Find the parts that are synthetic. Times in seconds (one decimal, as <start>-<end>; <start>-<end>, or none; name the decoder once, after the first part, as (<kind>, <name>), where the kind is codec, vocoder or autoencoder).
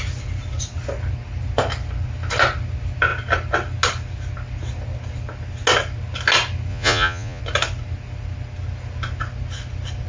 6.7-7.4 (vocoder, Vocos)